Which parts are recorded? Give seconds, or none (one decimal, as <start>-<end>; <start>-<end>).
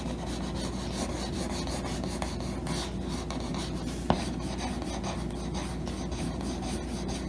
0.0-7.3